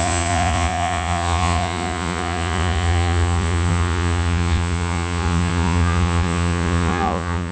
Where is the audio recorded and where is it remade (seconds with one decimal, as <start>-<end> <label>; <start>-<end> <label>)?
0.0-7.5 remade